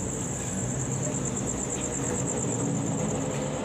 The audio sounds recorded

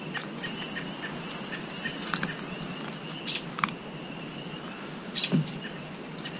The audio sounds recorded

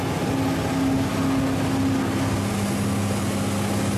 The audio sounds recorded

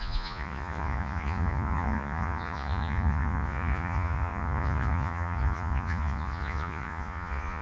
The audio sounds remade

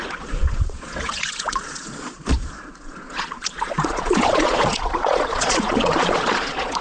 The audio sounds remade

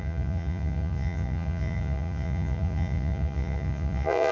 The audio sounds remade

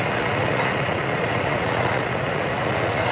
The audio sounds remade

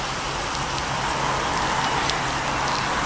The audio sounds recorded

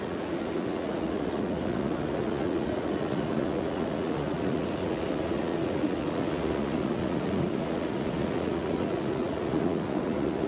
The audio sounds remade